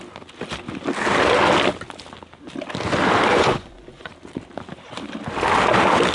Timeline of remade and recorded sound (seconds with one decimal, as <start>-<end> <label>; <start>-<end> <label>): 0.0-3.3 recorded; 3.3-4.1 remade; 4.1-6.1 recorded